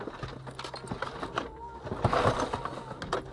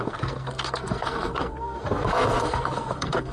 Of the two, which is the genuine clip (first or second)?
first